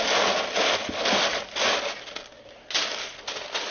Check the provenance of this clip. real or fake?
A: real